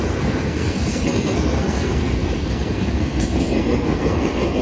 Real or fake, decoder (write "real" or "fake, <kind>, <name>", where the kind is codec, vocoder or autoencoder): fake, codec, SNAC